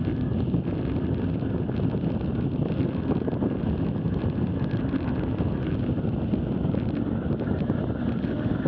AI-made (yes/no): no